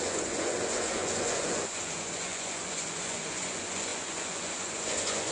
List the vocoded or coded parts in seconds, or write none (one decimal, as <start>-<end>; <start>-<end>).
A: 0.0-5.3